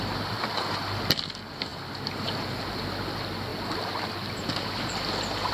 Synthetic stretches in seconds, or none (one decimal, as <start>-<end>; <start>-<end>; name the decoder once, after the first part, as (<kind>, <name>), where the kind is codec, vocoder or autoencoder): none